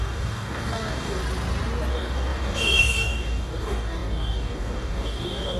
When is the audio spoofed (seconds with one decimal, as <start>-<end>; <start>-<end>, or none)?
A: 0.0-1.2; 1.9-5.6